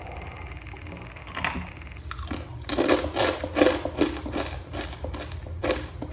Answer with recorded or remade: recorded